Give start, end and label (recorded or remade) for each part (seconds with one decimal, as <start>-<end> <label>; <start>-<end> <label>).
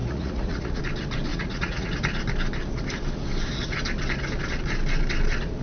0.0-0.8 remade; 0.8-1.3 recorded; 1.3-1.9 remade; 1.9-5.6 recorded